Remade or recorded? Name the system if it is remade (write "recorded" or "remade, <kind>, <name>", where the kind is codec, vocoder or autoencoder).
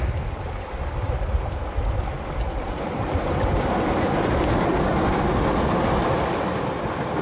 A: recorded